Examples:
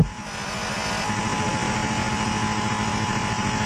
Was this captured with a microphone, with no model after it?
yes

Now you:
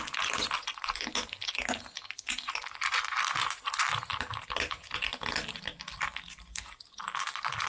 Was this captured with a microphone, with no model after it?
yes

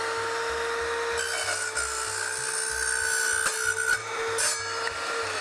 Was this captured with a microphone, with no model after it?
yes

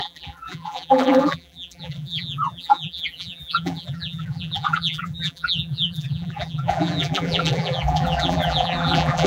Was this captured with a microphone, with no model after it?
no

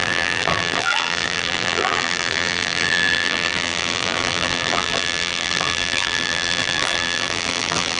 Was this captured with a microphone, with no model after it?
no